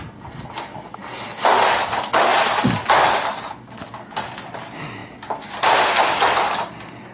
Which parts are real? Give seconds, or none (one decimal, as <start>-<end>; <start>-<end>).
0.0-7.1